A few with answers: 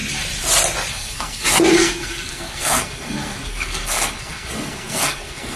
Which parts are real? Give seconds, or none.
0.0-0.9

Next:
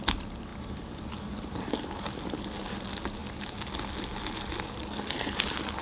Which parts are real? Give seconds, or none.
0.0-5.8